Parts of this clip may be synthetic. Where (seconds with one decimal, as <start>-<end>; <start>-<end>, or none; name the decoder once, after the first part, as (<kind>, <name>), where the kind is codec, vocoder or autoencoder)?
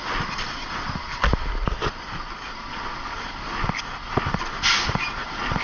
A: none